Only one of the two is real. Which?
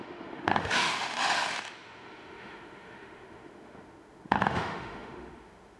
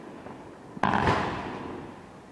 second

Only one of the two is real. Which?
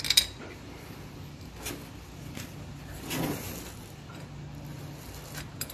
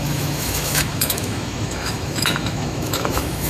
first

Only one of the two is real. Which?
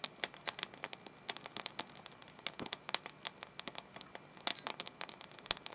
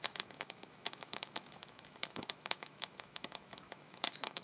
first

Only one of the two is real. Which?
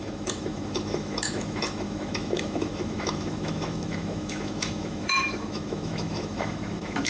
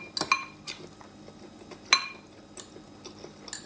second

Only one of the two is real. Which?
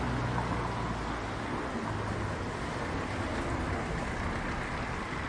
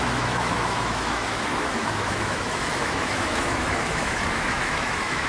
first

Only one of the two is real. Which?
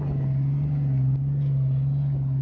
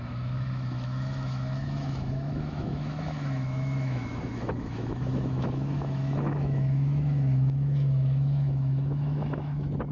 first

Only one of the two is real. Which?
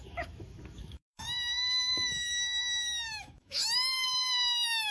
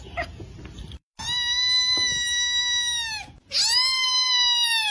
second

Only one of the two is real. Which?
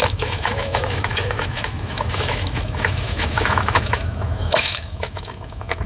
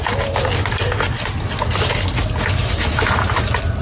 second